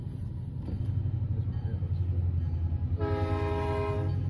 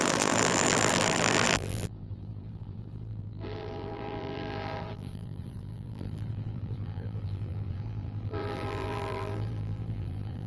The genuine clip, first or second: first